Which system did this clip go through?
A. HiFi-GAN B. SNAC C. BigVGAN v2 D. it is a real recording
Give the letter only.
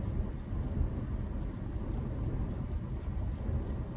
D